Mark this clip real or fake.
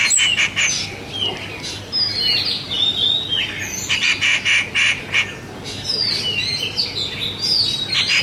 real